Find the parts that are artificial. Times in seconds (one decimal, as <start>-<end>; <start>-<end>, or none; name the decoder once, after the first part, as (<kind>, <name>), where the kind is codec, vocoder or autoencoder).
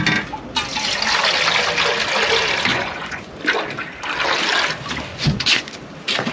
2.7-3.3 (vocoder, Vocos); 5.1-5.7